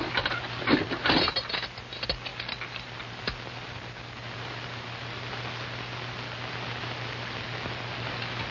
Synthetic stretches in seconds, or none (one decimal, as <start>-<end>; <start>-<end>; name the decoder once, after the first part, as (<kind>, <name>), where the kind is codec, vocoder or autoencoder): none